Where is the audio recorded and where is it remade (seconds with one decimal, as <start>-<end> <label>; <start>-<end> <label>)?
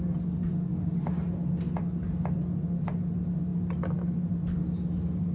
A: 0.0-5.3 recorded